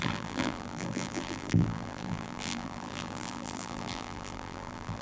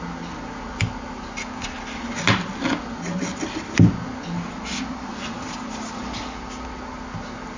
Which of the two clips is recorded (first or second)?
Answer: second